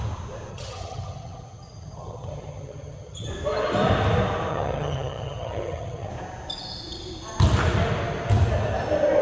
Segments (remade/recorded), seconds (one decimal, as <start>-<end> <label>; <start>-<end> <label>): 0.0-0.5 recorded; 0.5-3.3 remade; 3.3-4.5 recorded; 4.5-6.1 remade; 6.1-9.2 recorded